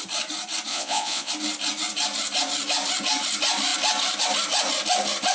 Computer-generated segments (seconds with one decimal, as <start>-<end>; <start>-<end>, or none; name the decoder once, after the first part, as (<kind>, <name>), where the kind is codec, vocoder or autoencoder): 0.7-1.3 (vocoder, Vocos)